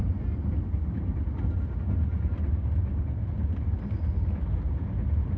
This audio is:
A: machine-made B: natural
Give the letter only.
B